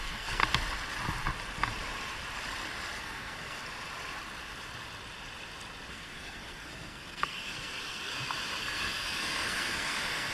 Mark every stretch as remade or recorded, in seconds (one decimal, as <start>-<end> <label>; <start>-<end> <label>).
0.0-0.4 remade; 0.4-3.0 recorded; 3.0-3.6 remade; 3.6-5.9 recorded; 5.9-8.1 remade; 8.1-8.6 recorded; 8.6-10.3 remade